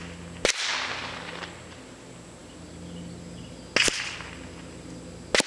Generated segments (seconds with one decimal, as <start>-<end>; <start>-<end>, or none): none